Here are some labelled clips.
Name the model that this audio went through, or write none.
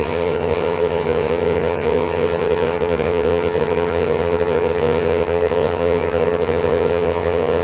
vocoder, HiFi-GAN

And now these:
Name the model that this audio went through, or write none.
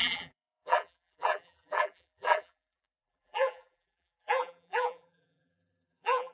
vocoder, BigVGAN v2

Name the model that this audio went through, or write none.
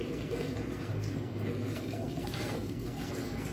codec, SNAC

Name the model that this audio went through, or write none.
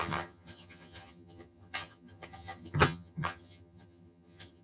vocoder, HiFi-GAN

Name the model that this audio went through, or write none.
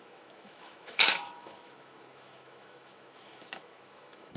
autoencoder, DAC-VAE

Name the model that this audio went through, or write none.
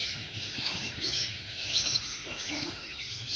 autoencoder, DAC-VAE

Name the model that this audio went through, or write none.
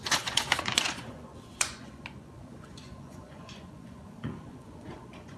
vocoder, Vocos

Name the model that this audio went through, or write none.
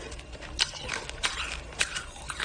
none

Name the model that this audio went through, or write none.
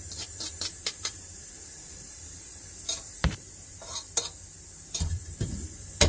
vocoder, BigVGAN v2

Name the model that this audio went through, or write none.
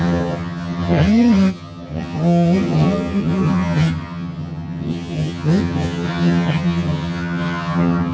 vocoder, HiFi-GAN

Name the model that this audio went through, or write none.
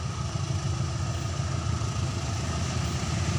none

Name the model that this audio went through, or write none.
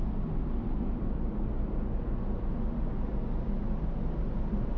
none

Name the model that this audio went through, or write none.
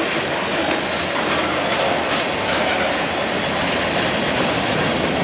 none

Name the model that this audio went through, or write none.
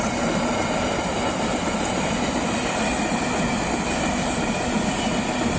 none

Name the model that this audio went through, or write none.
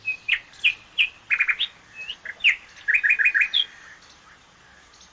none